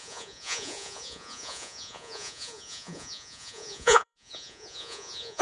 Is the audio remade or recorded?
remade